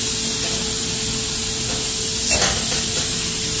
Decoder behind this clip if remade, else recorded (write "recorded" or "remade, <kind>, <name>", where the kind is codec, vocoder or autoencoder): recorded